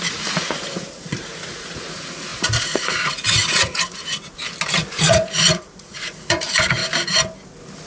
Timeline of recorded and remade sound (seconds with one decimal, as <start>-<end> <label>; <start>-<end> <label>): 0.0-4.0 remade; 4.0-5.0 recorded; 5.0-6.8 remade; 6.8-7.9 recorded